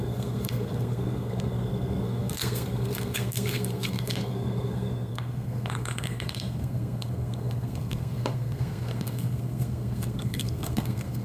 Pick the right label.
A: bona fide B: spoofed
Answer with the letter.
B